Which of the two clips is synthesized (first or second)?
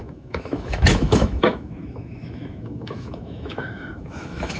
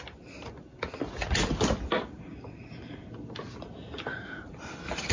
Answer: first